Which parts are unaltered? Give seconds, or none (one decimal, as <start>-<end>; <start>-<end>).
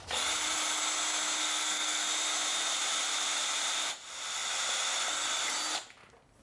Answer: 0.0-1.4; 2.0-6.4